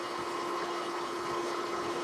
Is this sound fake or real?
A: fake